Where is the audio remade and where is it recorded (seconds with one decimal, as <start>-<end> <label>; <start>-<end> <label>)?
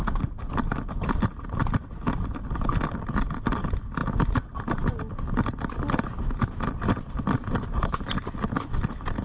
0.0-9.2 recorded